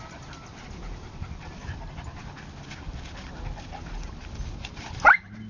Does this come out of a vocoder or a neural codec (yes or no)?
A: no